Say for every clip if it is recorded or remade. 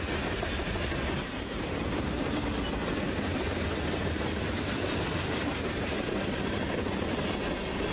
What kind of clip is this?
recorded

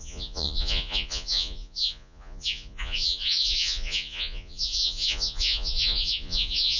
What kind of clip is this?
remade